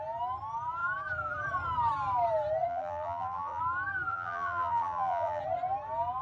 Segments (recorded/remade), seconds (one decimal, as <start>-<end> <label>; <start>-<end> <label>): 0.0-2.7 recorded; 2.7-3.6 remade; 3.6-4.1 recorded; 4.1-5.4 remade; 5.4-6.2 recorded